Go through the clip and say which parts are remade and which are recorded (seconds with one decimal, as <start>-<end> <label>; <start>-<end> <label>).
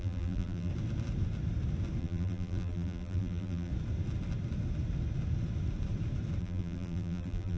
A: 0.0-0.7 remade; 0.7-2.0 recorded; 2.0-3.7 remade; 3.7-6.4 recorded; 6.4-7.6 remade